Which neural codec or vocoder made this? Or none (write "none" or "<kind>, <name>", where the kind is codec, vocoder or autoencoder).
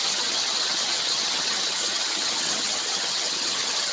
vocoder, HiFi-GAN